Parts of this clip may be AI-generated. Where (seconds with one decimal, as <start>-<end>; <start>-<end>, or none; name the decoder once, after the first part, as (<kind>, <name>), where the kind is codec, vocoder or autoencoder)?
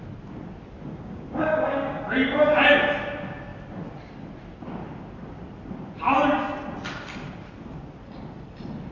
0.9-2.0 (codec, DAC)